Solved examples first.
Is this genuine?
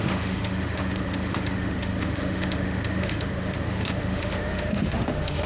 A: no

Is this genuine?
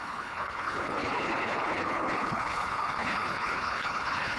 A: no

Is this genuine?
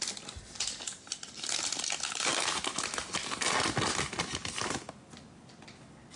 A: yes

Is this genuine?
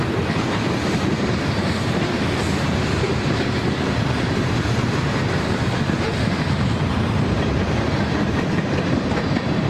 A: no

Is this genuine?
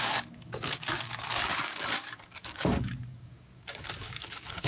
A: no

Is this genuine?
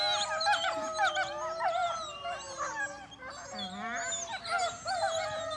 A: yes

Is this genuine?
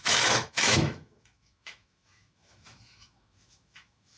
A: no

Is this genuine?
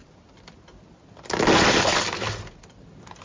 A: yes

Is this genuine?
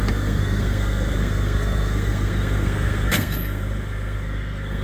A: no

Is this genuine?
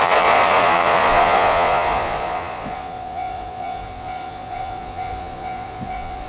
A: no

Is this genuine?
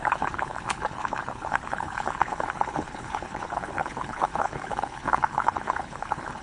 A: no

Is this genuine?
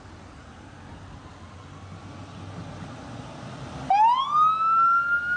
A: yes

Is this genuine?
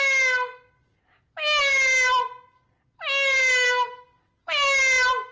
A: yes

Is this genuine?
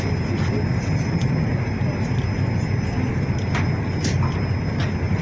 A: yes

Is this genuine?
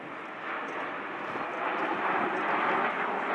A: yes